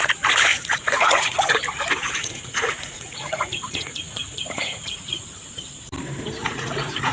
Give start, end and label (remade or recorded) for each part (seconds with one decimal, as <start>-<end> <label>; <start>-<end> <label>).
0.0-0.5 recorded; 0.5-1.5 remade; 1.5-2.2 recorded; 2.2-5.6 remade; 5.6-6.4 recorded; 6.4-7.1 remade